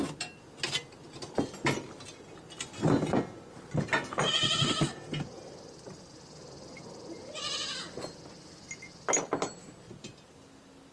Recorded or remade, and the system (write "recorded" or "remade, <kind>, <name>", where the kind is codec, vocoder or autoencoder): recorded